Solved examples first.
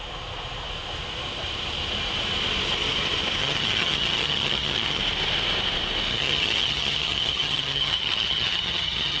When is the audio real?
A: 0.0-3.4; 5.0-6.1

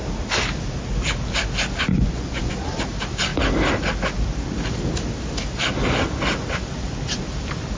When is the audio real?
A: 0.0-1.9; 2.5-7.8

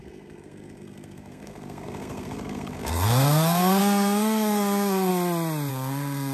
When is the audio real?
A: 5.1-5.7